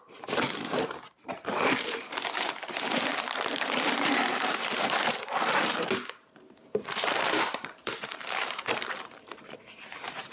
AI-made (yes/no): yes